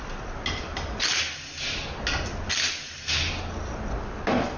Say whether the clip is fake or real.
real